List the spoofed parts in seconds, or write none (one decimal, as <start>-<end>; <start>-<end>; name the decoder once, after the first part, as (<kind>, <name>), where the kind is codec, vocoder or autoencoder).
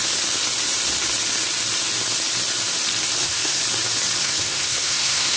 3.2-3.6 (codec, SNAC); 4.2-5.4